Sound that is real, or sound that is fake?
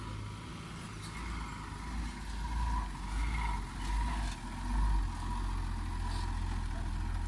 real